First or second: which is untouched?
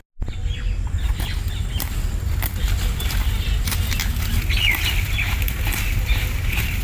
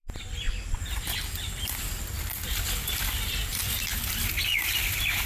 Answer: first